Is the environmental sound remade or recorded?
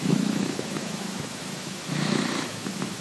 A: remade